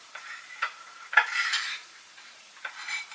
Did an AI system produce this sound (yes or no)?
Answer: yes